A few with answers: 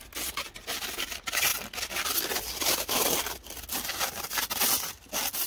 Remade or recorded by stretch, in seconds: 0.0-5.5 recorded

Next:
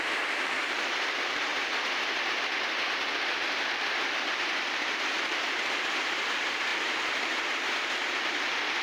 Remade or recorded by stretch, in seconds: 0.0-1.5 remade; 1.5-3.3 recorded; 3.3-8.8 remade

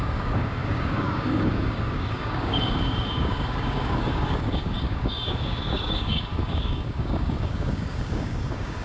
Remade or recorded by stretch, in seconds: 0.0-8.8 remade

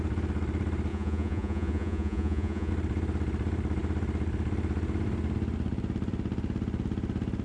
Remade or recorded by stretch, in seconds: 0.0-0.9 recorded; 0.9-2.7 remade; 2.7-7.4 recorded